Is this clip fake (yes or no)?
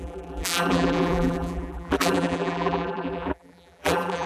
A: yes